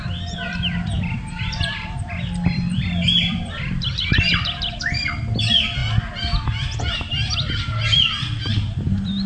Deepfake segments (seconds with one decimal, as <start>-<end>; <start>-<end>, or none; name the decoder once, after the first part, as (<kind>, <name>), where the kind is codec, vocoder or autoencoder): 0.0-5.8 (vocoder, BigVGAN v2); 6.8-9.3

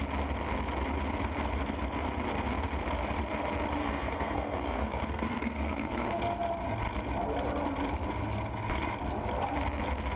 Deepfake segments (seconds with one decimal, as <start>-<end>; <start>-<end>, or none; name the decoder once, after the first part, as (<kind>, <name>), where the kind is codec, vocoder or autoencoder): 3.8-6.2 (codec, SNAC)

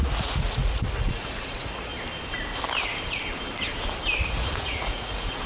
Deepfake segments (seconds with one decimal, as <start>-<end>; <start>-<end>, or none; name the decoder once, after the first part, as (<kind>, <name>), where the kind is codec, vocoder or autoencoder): 0.0-1.9 (vocoder, Vocos); 4.3-5.5

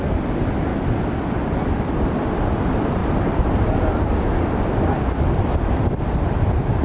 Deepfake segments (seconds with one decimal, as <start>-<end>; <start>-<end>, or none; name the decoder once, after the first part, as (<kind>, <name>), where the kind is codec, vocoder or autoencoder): 0.7-1.2 (vocoder, BigVGAN v2); 3.0-6.0

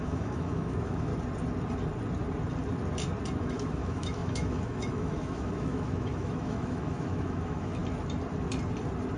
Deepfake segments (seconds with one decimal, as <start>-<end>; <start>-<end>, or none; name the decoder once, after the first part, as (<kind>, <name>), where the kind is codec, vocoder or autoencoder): 0.0-1.1 (autoencoder, DAC-VAE); 3.4-7.8